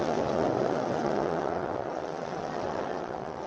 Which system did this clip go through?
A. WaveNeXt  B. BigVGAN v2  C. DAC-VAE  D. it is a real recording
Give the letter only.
A